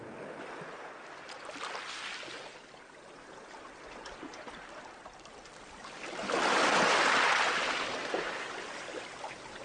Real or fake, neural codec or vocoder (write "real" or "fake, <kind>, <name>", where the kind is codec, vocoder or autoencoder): real